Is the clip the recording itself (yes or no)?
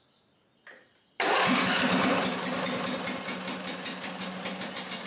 yes